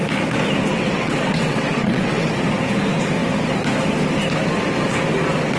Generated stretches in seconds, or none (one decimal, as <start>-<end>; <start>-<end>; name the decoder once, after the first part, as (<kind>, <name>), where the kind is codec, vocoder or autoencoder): 0.7-2.3 (vocoder, WaveNeXt)